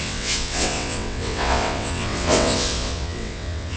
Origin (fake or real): fake